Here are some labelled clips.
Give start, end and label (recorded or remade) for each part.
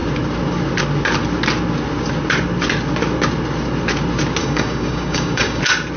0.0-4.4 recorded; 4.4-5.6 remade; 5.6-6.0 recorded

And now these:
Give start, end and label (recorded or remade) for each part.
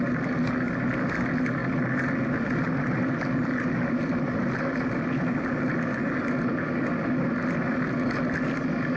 0.0-9.0 recorded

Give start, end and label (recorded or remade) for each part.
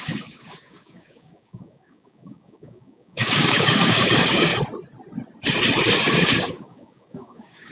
0.0-4.5 remade; 4.5-5.9 recorded; 5.9-7.7 remade